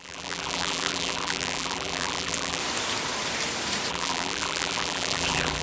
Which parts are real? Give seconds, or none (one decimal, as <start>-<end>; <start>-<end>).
2.6-3.9